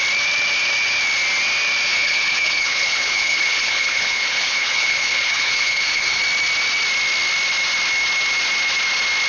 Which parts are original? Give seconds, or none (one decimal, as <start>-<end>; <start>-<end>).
0.0-1.9; 6.2-9.3